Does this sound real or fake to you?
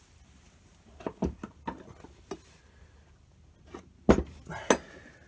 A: real